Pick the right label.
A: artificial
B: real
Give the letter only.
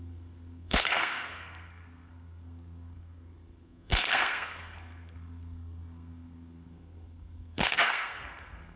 A